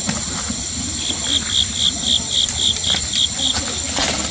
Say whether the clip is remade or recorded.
recorded